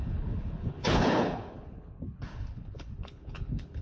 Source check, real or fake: fake